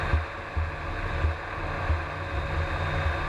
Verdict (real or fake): real